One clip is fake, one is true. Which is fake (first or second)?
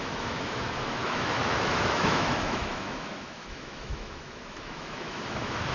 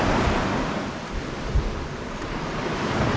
first